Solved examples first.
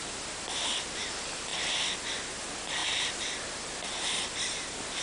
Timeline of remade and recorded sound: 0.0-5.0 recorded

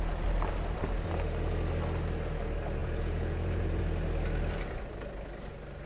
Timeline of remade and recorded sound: 0.0-2.8 recorded; 2.8-3.8 remade; 3.8-5.9 recorded

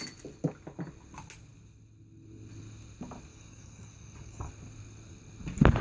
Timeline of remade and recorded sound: 0.0-3.3 recorded; 3.3-4.5 remade; 4.5-5.8 recorded

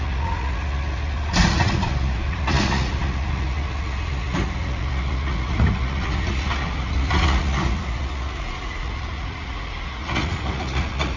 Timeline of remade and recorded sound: 0.0-11.2 remade

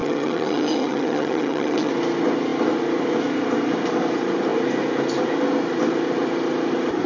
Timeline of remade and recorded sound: 0.0-1.9 remade; 1.9-7.1 recorded

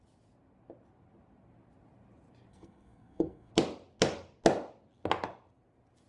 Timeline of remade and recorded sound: 0.0-2.5 recorded; 2.5-3.5 remade; 3.5-6.1 recorded

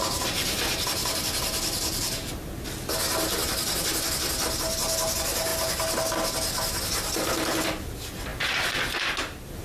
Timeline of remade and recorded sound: 0.0-9.6 recorded